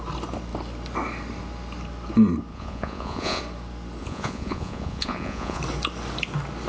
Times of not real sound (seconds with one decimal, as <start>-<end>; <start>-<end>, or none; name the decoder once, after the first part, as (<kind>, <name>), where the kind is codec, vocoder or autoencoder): 2.5-3.4 (vocoder, Vocos); 4.0-5.6